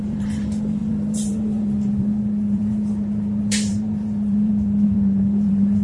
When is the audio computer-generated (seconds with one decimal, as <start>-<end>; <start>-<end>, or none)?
0.0-5.8